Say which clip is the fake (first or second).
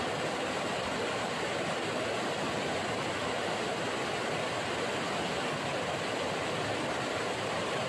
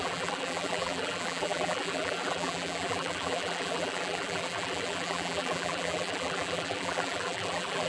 second